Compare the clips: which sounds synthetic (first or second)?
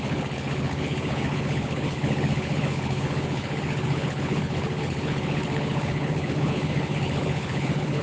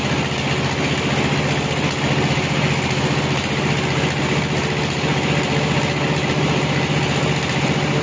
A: first